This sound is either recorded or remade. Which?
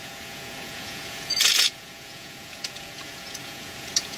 remade